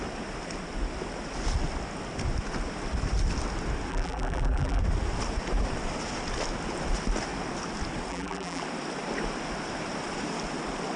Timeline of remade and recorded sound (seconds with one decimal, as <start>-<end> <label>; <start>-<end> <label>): 0.0-3.9 recorded; 3.9-4.8 remade; 4.8-8.1 recorded; 8.1-8.6 remade; 8.6-11.0 recorded